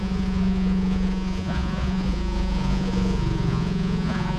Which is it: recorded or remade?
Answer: remade